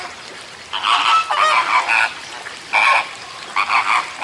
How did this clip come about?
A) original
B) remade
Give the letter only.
A